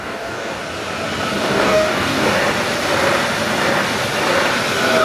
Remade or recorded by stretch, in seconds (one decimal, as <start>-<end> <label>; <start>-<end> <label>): 0.0-0.6 remade; 0.6-1.4 recorded; 1.4-2.4 remade; 2.4-5.0 recorded